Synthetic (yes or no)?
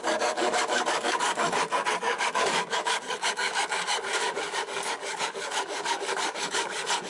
yes